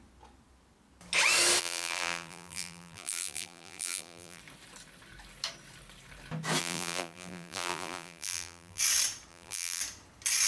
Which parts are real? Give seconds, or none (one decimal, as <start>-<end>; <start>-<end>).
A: 0.0-1.6; 4.4-6.6; 8.8-9.3; 9.8-10.5